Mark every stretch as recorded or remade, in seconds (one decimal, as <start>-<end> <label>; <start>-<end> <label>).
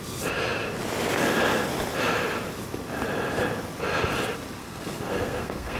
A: 0.0-4.6 recorded; 4.6-5.8 remade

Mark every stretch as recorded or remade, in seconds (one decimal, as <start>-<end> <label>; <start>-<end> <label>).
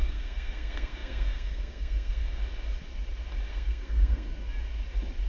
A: 0.0-2.4 remade; 2.4-3.5 recorded; 3.5-4.3 remade; 4.3-5.3 recorded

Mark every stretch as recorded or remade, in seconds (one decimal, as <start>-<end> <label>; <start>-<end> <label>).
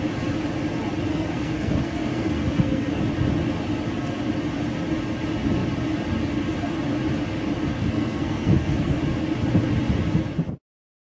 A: 0.0-1.1 recorded; 1.1-3.0 remade; 3.0-7.7 recorded; 7.7-9.0 remade; 9.0-11.0 recorded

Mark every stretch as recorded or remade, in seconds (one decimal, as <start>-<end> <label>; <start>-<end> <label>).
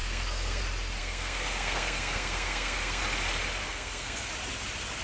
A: 0.0-0.6 remade; 0.6-1.0 recorded; 1.0-3.0 remade; 3.0-3.6 recorded; 3.6-4.3 remade; 4.3-5.0 recorded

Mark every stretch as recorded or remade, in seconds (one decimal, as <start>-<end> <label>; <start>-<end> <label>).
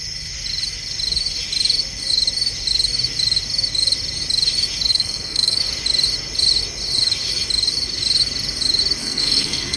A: 0.0-4.9 recorded; 4.9-5.6 remade; 5.6-9.0 recorded; 9.0-9.8 remade